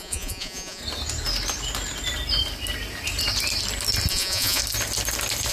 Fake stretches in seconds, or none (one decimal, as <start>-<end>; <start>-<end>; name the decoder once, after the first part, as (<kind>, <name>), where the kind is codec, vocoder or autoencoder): 0.0-0.8 (vocoder, Vocos); 4.1-4.6